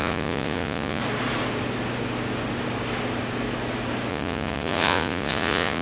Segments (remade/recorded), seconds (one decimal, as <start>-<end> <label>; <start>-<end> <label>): 0.0-1.0 remade; 1.0-4.1 recorded; 4.1-5.8 remade